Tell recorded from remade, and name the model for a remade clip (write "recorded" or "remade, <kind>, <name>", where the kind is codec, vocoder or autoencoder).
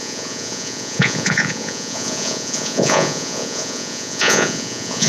remade, vocoder, Vocos